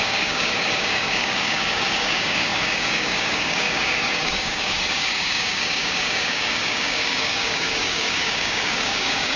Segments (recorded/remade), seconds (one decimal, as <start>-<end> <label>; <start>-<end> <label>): 0.0-9.4 remade